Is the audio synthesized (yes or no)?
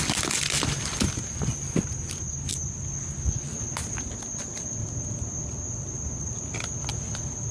no